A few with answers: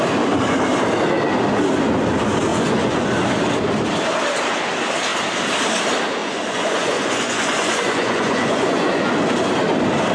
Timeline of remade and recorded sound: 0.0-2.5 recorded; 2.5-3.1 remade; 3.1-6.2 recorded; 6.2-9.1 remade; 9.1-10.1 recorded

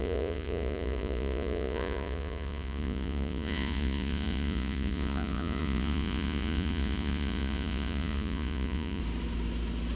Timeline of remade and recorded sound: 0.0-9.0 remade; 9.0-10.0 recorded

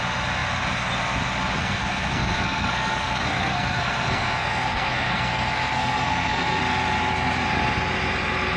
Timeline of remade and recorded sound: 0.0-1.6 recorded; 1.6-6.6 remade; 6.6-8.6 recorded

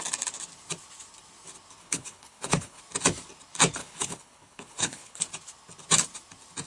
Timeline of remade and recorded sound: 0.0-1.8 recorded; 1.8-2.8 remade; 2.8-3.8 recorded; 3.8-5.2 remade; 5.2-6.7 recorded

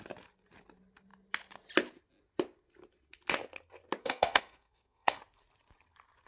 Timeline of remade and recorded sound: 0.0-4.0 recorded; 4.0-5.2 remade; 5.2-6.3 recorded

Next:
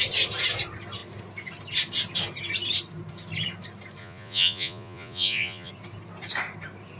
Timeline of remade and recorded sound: 0.0-4.0 recorded; 4.0-5.7 remade; 5.7-7.0 recorded